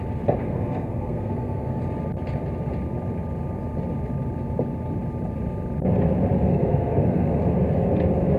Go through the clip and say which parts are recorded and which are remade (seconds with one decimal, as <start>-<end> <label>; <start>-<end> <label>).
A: 0.0-0.4 recorded; 0.4-1.8 remade; 1.8-6.5 recorded; 6.5-7.4 remade; 7.4-8.4 recorded

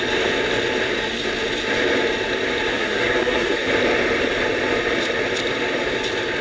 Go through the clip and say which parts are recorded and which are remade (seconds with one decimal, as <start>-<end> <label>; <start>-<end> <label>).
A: 0.0-2.7 recorded; 2.7-3.7 remade; 3.7-6.4 recorded